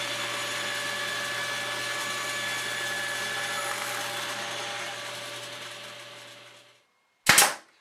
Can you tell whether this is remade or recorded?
recorded